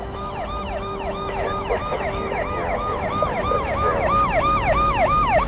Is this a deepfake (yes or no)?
yes